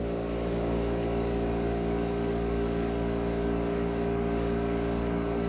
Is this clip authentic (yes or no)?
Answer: no